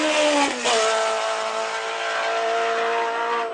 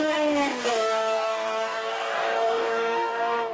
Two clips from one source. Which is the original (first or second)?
first